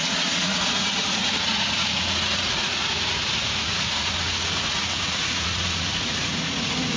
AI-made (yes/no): yes